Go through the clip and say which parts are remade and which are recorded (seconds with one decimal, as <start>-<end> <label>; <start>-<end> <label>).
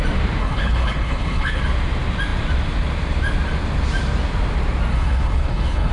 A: 0.0-0.4 recorded; 0.4-1.6 remade; 1.6-4.9 recorded; 4.9-5.9 remade